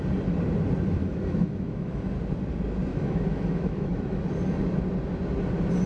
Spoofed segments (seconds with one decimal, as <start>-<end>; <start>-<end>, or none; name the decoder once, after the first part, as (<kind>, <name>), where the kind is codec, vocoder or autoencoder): 1.0-2.1 (autoencoder, DAC-VAE); 2.9-4.2